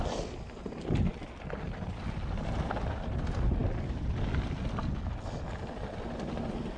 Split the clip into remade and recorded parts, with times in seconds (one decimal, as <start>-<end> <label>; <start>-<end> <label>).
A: 0.0-6.8 recorded